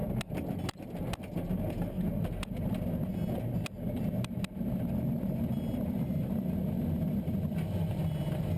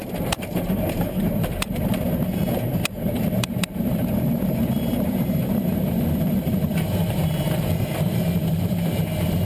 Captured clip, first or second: first